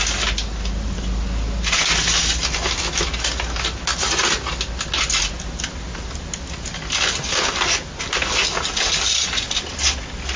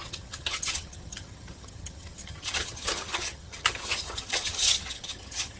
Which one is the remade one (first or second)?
second